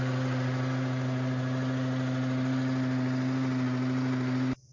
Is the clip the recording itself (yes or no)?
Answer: yes